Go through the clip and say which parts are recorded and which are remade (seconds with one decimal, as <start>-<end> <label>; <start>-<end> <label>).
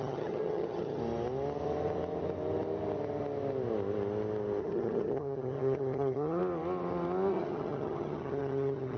0.0-1.0 remade; 1.0-4.6 recorded; 4.6-6.4 remade; 6.4-7.3 recorded; 7.3-9.0 remade